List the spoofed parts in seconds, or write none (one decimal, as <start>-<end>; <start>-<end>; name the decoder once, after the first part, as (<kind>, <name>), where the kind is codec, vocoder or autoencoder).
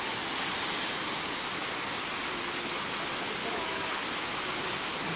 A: 3.4-4.3 (autoencoder, DAC-VAE)